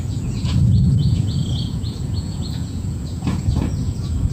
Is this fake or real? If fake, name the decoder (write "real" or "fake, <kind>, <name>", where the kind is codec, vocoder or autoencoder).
fake, vocoder, Vocos